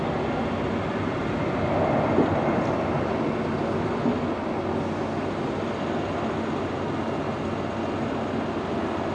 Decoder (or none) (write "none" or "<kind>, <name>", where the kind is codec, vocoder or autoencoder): none